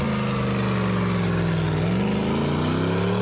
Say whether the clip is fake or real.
real